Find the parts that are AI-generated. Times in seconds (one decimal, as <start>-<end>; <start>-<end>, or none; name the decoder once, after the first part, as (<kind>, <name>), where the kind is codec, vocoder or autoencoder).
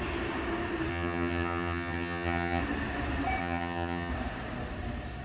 0.9-2.6 (vocoder, HiFi-GAN); 3.4-4.1